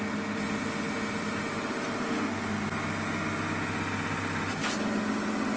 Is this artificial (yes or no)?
no